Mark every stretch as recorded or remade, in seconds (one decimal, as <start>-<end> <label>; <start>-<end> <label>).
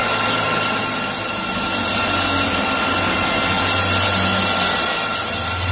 0.0-5.7 recorded